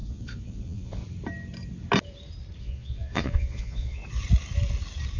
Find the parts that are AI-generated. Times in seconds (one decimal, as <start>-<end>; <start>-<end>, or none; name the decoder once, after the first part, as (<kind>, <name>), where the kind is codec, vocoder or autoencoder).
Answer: 0.0-1.0 (vocoder, Vocos); 2.6-4.0